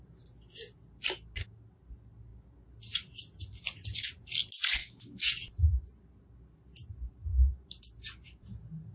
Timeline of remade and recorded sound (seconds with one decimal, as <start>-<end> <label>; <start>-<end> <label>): 0.0-4.8 recorded; 4.8-5.3 remade; 5.3-8.9 recorded